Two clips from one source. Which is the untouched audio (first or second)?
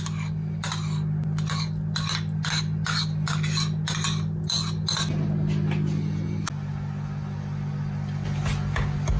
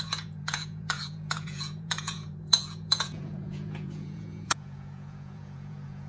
first